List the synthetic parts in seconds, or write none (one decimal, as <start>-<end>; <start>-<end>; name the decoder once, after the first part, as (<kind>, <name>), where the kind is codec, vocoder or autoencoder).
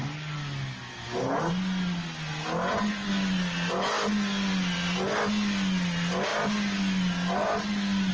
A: none